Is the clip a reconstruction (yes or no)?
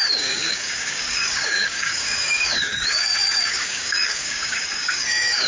yes